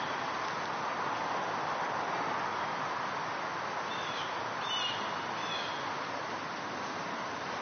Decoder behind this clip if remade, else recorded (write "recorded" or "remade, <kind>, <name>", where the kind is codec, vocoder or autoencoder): recorded